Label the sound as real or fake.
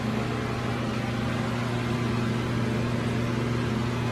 real